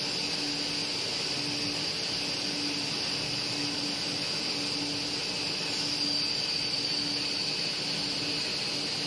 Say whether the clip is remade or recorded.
recorded